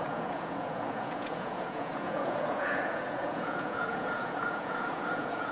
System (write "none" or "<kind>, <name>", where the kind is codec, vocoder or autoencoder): vocoder, Vocos